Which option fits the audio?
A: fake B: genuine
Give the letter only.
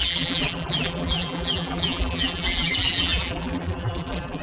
A